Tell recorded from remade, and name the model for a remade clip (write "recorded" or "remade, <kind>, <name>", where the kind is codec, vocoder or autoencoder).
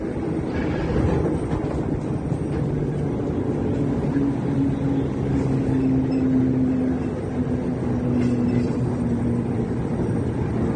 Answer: recorded